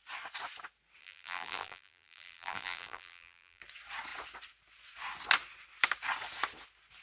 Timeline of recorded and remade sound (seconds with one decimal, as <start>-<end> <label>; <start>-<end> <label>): 0.0-1.0 recorded; 1.0-3.6 remade; 3.6-7.0 recorded